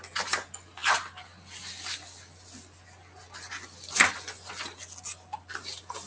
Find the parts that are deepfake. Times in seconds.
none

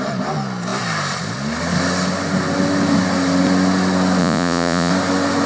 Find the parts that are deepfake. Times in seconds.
4.2-4.9 (vocoder, Vocos)